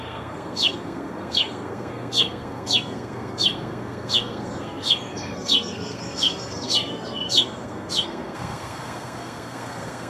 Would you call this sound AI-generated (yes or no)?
yes